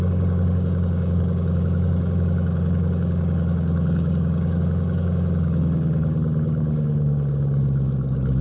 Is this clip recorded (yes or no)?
no